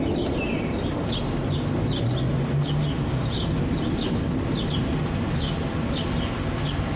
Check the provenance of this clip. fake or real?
real